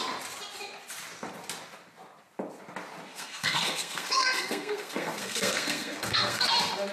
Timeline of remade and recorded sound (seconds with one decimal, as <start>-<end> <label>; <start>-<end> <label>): 0.0-3.1 recorded; 3.1-6.5 remade; 6.5-6.9 recorded